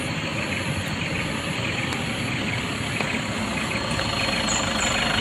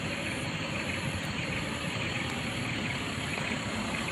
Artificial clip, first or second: second